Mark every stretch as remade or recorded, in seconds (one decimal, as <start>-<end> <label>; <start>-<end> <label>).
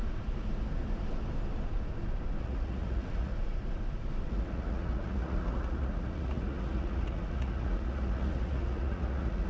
0.0-2.4 recorded; 2.4-3.3 remade; 3.3-4.3 recorded; 4.3-9.5 remade